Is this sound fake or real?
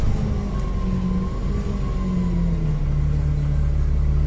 real